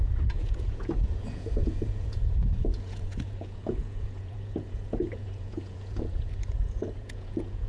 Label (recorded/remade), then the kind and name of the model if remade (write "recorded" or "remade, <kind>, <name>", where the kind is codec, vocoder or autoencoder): remade, vocoder, Vocos